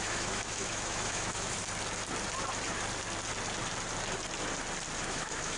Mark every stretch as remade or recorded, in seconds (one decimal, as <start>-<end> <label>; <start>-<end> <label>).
0.0-1.6 remade; 1.6-5.0 recorded; 5.0-5.6 remade